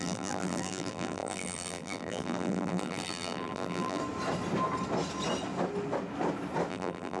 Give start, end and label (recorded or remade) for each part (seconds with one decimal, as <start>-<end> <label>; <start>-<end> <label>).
0.0-4.0 remade; 4.0-6.7 recorded; 6.7-7.2 remade